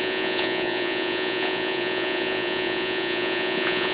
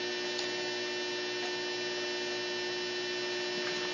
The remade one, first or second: first